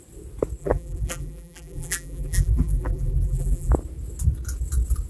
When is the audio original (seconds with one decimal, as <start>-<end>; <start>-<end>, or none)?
0.0-0.6; 3.7-5.1